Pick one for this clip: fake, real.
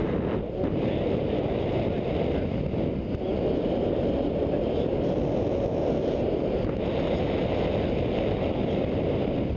real